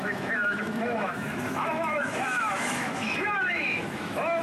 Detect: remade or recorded remade